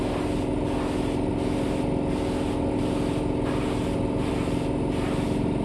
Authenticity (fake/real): fake